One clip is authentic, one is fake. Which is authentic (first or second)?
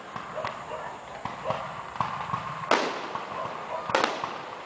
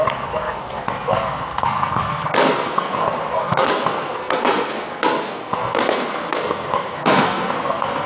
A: first